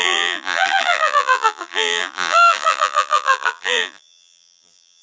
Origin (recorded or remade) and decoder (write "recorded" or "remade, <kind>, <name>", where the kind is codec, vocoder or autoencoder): remade, vocoder, BigVGAN v2